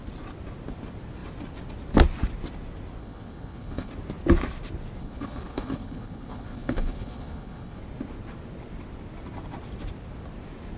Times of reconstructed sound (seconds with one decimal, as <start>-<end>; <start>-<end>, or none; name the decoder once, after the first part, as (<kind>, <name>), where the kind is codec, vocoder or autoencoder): 3.0-3.9 (codec, HILCodec); 5.0-7.8